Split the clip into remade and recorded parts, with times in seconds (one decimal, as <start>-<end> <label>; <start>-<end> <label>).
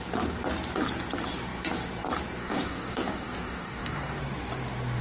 0.0-2.4 recorded; 2.4-4.2 remade; 4.2-5.0 recorded